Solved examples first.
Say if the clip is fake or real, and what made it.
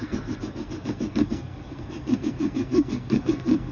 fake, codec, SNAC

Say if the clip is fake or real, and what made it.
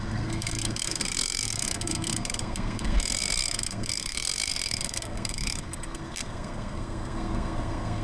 fake, codec, SNAC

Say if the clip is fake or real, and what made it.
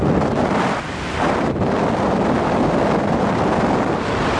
real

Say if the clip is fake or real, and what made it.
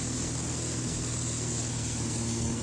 fake, codec, SNAC